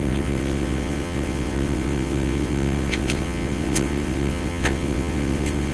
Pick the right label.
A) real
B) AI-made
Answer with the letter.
B